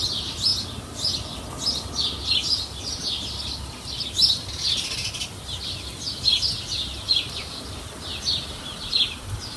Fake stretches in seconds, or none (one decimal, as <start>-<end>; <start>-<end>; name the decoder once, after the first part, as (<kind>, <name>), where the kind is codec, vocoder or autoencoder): none